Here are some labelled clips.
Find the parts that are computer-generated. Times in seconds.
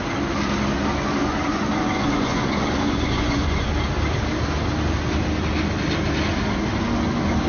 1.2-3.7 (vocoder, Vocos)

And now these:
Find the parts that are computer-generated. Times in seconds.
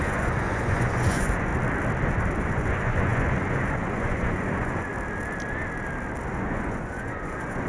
0.0-1.5 (vocoder, Vocos); 2.4-4.9; 6.3-7.7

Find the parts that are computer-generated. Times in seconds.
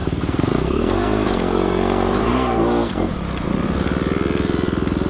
0.0-3.1 (codec, SNAC)